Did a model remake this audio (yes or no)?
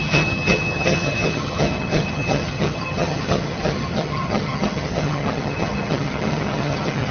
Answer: yes